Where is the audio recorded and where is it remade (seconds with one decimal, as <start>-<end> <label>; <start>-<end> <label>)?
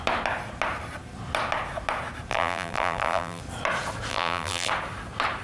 0.0-2.3 recorded; 2.3-3.4 remade; 3.4-4.1 recorded; 4.1-4.7 remade; 4.7-5.4 recorded